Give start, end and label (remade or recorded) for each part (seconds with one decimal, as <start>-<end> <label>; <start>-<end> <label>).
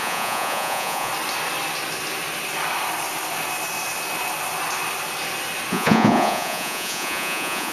0.0-1.1 remade; 1.1-5.7 recorded; 5.7-7.7 remade